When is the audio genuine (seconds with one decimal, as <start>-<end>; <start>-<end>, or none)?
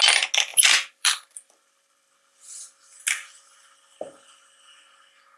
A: 0.0-0.5; 2.1-5.4